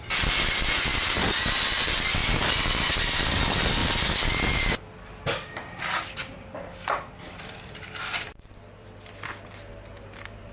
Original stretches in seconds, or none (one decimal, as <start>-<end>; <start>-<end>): 2.2-2.9; 3.8-7.2